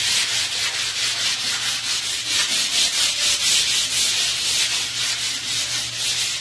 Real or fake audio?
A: real